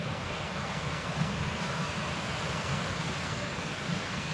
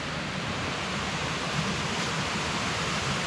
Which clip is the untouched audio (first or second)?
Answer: second